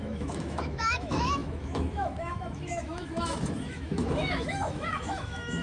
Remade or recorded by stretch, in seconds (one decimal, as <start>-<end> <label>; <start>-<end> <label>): 0.0-5.6 remade